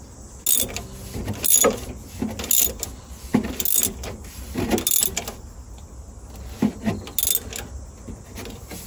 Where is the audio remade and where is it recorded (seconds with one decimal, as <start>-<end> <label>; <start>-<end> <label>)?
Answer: 0.0-8.9 recorded